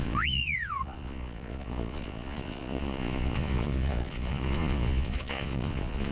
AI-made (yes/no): yes